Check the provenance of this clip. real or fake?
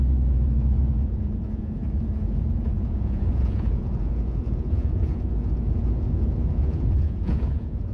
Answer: fake